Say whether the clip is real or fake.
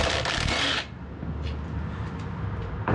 real